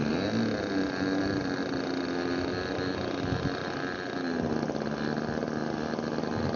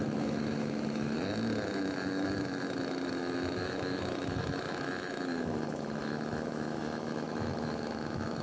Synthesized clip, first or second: second